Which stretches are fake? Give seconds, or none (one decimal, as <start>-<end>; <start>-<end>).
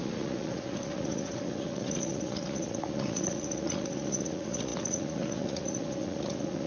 0.0-6.7